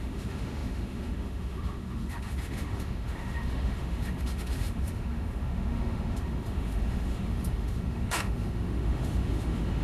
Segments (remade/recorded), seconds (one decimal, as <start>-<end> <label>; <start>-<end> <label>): 0.0-9.8 remade